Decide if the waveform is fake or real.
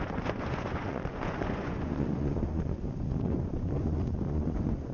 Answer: fake